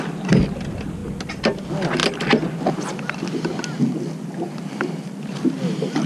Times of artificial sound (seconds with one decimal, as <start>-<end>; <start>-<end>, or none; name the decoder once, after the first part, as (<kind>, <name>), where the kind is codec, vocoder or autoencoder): none